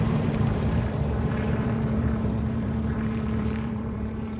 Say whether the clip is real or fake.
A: fake